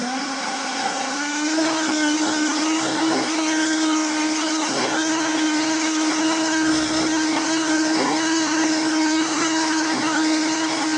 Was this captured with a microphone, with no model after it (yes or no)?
no